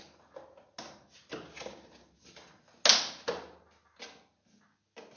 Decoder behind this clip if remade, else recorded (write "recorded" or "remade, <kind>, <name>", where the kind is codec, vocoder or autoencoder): recorded